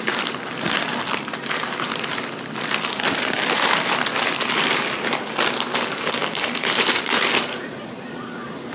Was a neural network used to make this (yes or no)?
yes